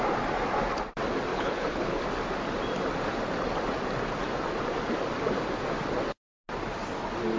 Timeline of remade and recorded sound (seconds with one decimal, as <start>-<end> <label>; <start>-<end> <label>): 0.0-1.3 recorded; 1.3-2.0 remade; 2.0-7.4 recorded